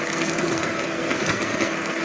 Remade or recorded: remade